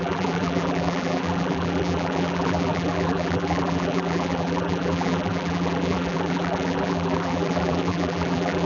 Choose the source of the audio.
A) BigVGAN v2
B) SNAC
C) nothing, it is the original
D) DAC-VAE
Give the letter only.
A